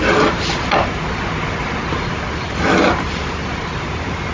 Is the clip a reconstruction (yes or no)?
no